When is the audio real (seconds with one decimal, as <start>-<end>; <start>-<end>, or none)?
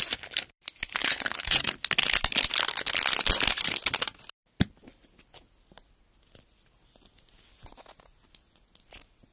0.0-1.0; 1.7-9.3